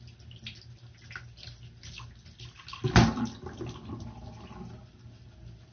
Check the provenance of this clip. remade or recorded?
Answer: recorded